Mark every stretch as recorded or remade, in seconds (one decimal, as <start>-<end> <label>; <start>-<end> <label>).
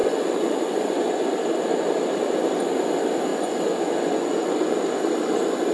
0.0-1.3 remade; 1.3-3.3 recorded; 3.3-4.8 remade; 4.8-5.7 recorded